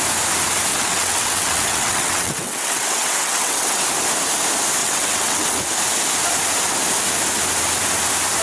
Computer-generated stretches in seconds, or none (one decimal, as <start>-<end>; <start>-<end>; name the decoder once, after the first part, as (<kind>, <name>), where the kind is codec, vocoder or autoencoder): 0.7-3.8 (vocoder, WaveNeXt); 4.8-5.6

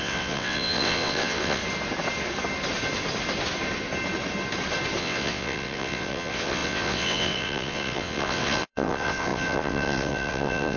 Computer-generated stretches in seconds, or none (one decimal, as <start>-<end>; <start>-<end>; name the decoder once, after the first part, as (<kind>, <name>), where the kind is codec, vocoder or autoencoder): 0.0-1.6 (vocoder, WaveNeXt); 5.0-10.8